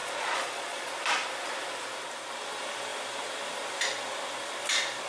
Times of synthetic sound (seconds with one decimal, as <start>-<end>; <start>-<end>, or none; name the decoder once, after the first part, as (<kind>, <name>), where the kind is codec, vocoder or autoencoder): 0.0-0.9 (vocoder, Vocos)